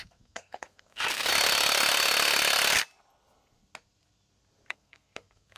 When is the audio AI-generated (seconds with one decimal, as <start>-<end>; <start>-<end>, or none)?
0.0-1.3; 4.7-5.6